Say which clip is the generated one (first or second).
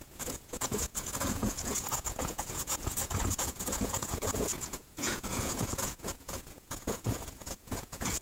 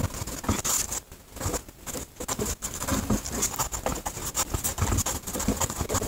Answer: first